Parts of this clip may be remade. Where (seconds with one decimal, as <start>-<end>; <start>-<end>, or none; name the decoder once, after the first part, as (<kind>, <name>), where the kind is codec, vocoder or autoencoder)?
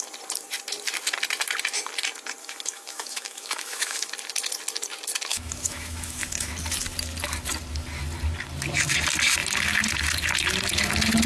2.4-4.1 (autoencoder, DAC-VAE); 5.3-6.5